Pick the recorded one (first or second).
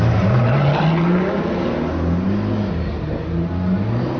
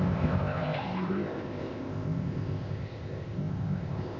first